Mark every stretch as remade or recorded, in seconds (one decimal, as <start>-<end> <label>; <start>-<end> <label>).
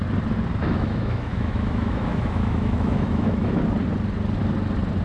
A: 0.0-0.6 recorded; 0.6-3.6 remade; 3.6-5.0 recorded